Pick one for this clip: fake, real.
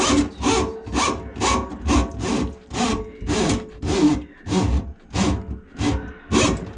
real